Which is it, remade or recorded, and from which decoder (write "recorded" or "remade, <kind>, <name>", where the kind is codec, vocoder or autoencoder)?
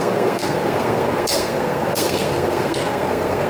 remade, codec, SNAC